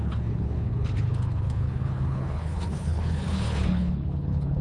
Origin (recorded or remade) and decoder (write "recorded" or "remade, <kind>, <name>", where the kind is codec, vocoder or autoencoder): remade, codec, HILCodec